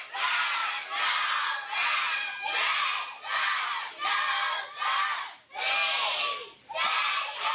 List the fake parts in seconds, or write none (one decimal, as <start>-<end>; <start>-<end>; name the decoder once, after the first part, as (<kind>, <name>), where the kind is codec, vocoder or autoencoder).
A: none